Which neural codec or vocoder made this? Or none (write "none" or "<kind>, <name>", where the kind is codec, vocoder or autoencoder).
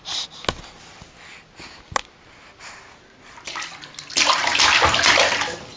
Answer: none